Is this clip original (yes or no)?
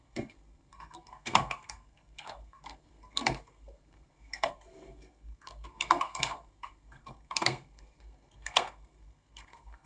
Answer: no